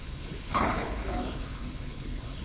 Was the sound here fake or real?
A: fake